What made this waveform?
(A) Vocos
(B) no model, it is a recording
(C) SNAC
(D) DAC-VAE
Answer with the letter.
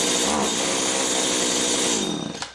B